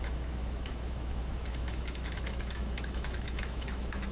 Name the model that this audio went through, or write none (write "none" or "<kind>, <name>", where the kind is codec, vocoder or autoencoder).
autoencoder, DAC-VAE